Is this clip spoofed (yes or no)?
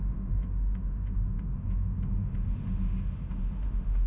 yes